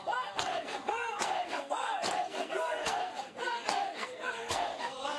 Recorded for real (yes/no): no